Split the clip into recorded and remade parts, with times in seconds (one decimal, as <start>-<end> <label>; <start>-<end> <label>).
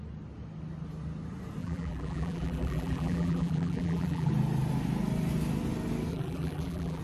0.0-1.6 recorded; 1.6-4.3 remade; 4.3-6.1 recorded; 6.1-7.0 remade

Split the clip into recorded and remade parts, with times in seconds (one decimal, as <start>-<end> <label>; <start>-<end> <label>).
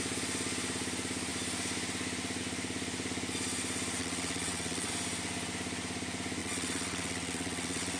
0.0-4.0 recorded; 4.0-4.9 remade; 4.9-6.4 recorded; 6.4-8.0 remade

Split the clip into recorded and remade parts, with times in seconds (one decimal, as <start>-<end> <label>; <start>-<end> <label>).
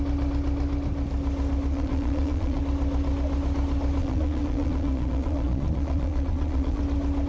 0.0-1.7 recorded; 1.7-2.6 remade; 2.6-4.0 recorded; 4.0-6.8 remade; 6.8-7.3 recorded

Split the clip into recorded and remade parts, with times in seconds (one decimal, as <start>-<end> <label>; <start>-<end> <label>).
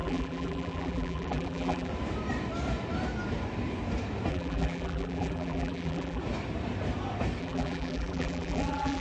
0.0-1.9 remade; 1.9-4.3 recorded; 4.3-6.2 remade; 6.2-7.4 recorded; 7.4-9.0 remade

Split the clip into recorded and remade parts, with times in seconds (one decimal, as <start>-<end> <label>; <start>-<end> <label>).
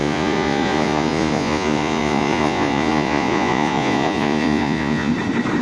0.0-5.1 remade; 5.1-5.6 recorded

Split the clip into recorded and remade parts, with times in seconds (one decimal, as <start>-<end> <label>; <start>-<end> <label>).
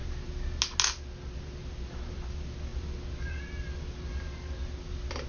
0.0-5.3 recorded